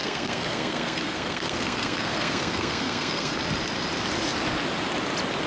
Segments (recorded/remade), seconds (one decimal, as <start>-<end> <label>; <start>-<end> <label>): 0.0-3.3 remade; 3.3-5.5 recorded